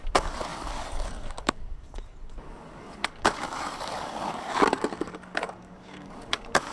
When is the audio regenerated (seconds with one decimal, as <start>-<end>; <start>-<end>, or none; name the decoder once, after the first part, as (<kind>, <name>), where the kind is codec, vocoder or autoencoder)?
0.0-6.7 (codec, DAC)